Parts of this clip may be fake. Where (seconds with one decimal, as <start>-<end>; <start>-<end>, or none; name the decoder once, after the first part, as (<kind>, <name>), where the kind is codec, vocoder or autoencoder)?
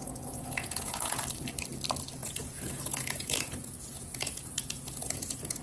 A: 0.0-1.2 (vocoder, Vocos); 2.2-5.6